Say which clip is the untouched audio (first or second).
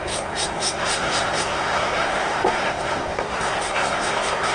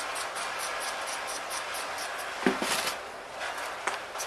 second